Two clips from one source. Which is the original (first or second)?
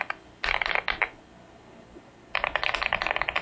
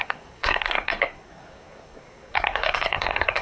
first